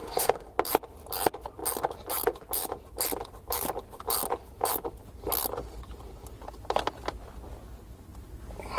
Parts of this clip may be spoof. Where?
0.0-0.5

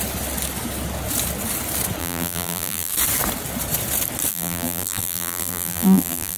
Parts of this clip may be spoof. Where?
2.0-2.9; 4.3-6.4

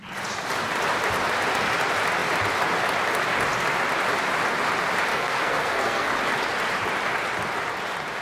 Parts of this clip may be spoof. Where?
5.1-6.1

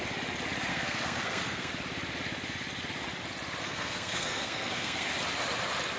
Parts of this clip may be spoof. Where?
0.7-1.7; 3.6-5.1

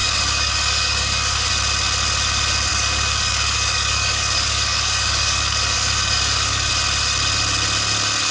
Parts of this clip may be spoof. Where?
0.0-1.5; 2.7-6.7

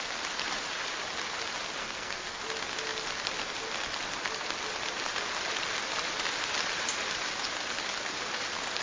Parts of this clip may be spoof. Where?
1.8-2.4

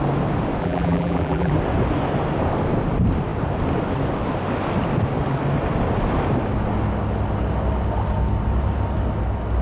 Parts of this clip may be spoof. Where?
0.6-1.5